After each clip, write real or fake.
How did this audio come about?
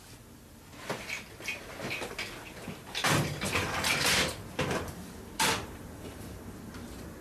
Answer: real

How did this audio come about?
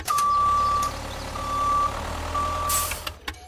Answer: real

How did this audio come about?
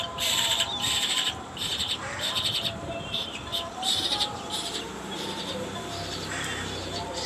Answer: fake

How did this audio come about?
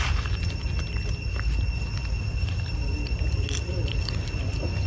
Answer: real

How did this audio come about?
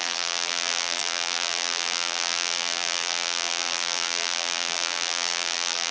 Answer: fake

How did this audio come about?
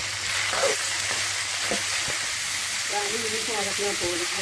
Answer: real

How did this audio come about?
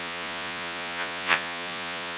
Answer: fake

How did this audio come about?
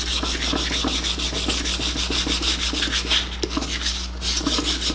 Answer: real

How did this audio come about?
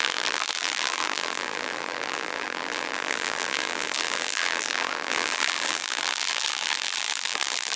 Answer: fake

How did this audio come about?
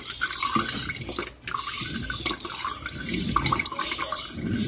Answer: real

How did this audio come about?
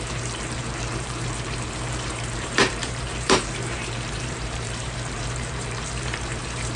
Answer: fake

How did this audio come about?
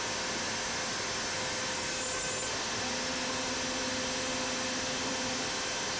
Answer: real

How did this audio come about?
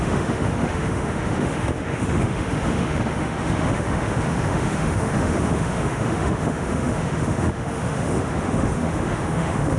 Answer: fake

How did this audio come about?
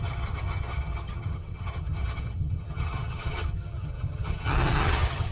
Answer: fake